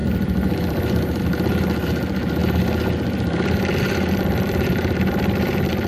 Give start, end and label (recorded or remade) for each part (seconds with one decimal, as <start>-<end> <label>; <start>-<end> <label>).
0.0-1.2 remade; 1.2-2.4 recorded; 2.4-5.9 remade